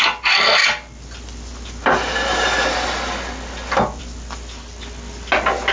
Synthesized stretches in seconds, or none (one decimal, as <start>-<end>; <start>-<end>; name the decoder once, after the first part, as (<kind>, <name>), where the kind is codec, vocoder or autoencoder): none